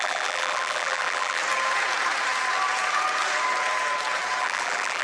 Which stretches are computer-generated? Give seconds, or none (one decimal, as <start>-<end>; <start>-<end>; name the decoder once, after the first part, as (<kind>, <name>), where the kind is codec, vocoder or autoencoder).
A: 0.0-1.4 (vocoder, BigVGAN v2); 4.4-5.0